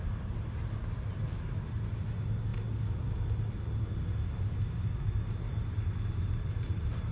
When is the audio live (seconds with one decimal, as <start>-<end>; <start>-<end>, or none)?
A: 0.0-7.1